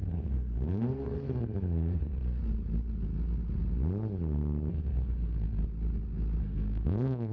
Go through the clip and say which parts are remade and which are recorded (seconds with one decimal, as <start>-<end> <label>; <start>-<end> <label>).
0.0-2.4 remade; 2.4-4.7 recorded; 4.7-5.6 remade; 5.6-6.4 recorded; 6.4-7.3 remade